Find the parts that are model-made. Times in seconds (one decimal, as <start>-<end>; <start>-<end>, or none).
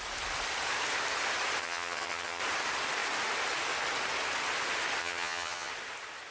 1.6-2.4; 5.0-5.7